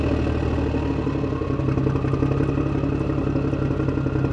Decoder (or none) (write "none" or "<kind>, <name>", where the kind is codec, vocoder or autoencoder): none